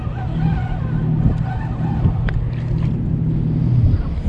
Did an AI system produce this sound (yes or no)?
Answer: no